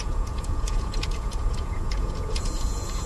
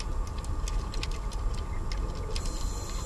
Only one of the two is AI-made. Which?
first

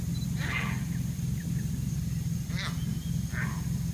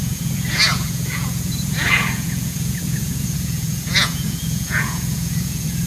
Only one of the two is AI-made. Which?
second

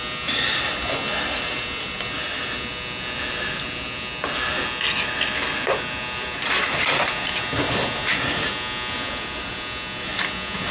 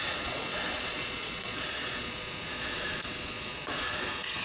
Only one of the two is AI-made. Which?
second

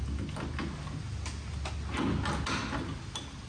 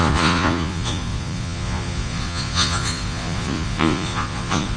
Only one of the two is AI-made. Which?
second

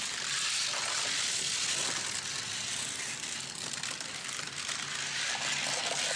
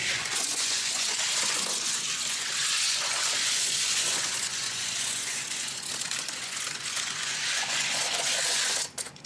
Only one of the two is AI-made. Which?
second